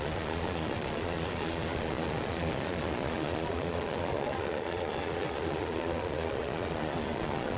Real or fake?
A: fake